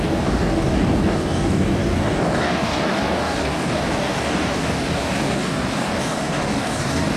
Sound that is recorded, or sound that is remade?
remade